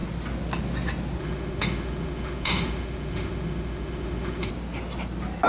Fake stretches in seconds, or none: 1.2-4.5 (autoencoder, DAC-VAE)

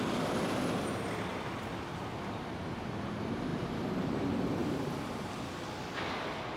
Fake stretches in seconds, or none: 3.5-4.0 (vocoder, BigVGAN v2); 4.6-5.3

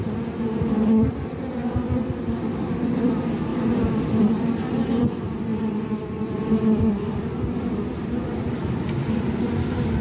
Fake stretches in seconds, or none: 0.0-3.5 (vocoder, BigVGAN v2); 4.2-10.0

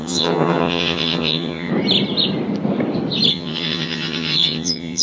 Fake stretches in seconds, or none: 0.0-1.7 (vocoder, HiFi-GAN); 3.3-5.0

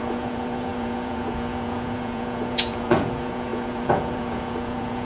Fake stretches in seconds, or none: 0.0-5.0 (vocoder, Vocos)